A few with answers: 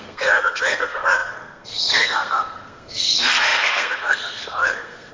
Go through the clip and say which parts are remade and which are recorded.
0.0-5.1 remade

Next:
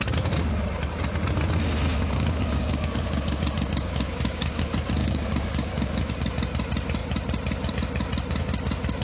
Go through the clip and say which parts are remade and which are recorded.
0.0-1.8 recorded; 1.8-4.6 remade; 4.6-5.0 recorded; 5.0-6.1 remade; 6.1-9.0 recorded

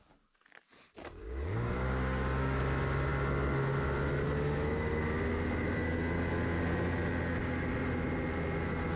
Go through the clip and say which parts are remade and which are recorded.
0.0-1.2 recorded; 1.2-2.6 remade; 2.6-9.0 recorded